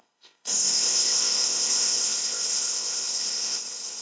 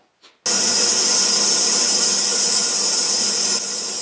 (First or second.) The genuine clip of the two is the second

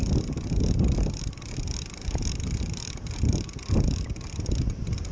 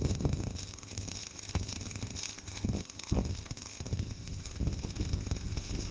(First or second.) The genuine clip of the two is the first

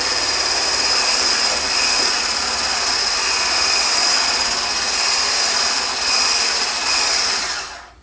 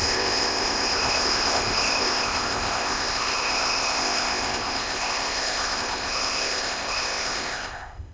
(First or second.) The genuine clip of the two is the first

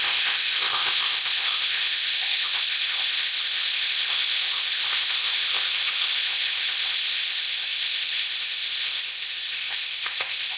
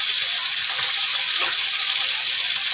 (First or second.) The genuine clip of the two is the second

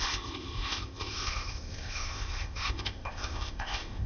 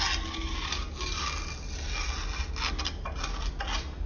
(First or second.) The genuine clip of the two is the second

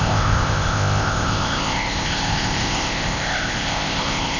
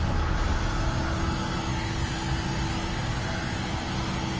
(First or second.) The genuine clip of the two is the second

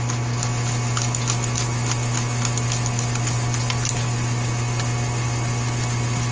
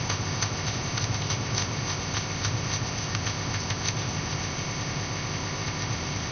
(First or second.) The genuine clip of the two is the first